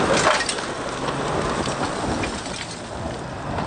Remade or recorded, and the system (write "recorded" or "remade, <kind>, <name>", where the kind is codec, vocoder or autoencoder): recorded